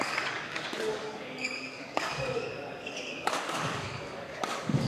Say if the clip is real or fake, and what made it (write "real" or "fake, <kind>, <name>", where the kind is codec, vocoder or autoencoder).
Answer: fake, codec, DAC